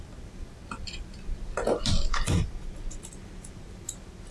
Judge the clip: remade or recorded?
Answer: recorded